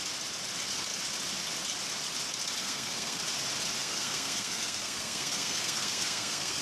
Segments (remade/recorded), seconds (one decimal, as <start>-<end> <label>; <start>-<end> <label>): 0.0-2.6 recorded; 2.6-3.2 remade; 3.2-3.8 recorded; 3.8-6.6 remade